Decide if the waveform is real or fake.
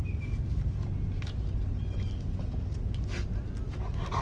real